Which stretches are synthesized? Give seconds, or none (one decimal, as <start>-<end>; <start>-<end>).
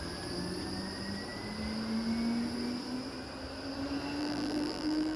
4.2-5.2